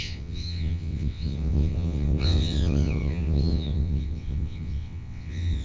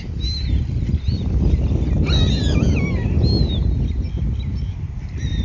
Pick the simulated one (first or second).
first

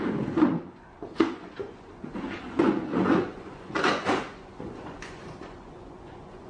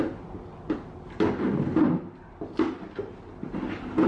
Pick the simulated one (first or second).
first